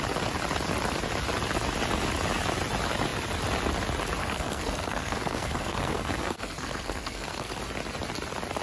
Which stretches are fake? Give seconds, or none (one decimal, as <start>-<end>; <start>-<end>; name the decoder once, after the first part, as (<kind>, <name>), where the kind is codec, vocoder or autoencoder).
4.2-7.6 (codec, SNAC)